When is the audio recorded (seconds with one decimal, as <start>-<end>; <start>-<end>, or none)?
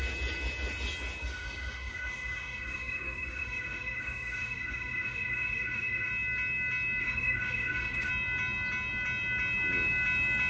0.0-1.2; 6.1-7.0; 8.1-10.5